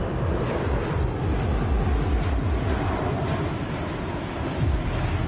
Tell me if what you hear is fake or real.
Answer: real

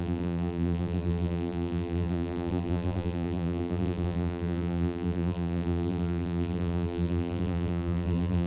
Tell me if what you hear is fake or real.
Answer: fake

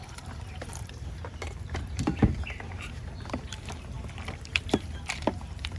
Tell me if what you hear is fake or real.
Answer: fake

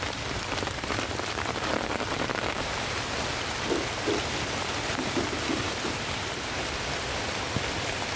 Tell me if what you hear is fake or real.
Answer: fake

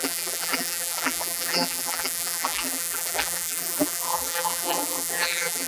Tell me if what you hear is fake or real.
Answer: fake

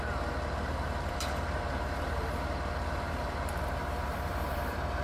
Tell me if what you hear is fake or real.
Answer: fake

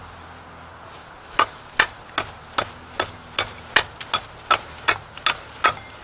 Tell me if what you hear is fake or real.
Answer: real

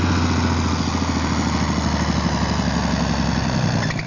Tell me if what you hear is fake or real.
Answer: real